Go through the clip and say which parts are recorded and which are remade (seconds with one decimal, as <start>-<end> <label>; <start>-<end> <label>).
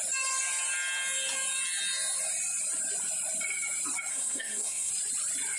0.0-4.1 recorded; 4.1-4.9 remade; 4.9-5.6 recorded